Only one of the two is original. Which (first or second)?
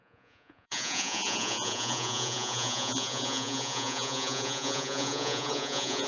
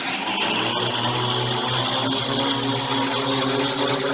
second